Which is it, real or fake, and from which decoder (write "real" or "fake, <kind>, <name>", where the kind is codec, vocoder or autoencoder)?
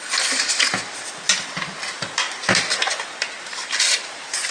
real